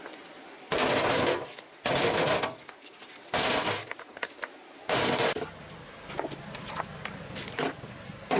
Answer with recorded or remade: recorded